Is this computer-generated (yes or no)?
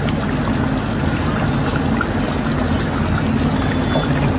no